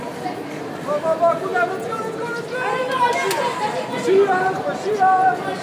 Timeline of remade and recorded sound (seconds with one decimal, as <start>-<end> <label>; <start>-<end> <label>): 0.0-5.6 recorded